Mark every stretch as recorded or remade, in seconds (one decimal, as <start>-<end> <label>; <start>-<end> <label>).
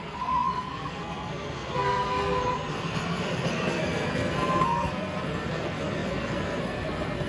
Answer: 0.0-7.3 remade